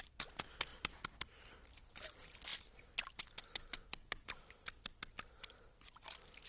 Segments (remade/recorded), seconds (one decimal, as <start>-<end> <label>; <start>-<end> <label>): 0.0-6.5 recorded